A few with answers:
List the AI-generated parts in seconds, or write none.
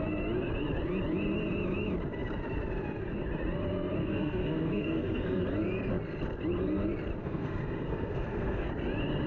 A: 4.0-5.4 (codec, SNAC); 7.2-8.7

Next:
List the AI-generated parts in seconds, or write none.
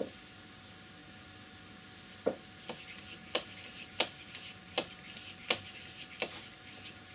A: none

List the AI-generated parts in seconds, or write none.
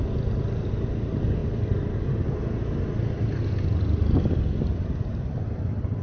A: none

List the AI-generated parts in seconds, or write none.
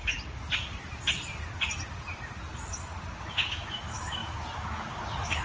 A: 3.2-5.4 (autoencoder, DAC-VAE)